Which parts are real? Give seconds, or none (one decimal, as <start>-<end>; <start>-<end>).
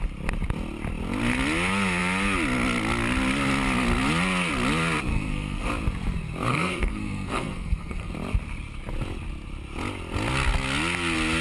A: 0.0-5.1; 5.7-6.5; 8.1-11.4